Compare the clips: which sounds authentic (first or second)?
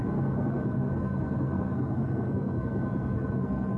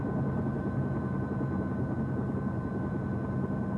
second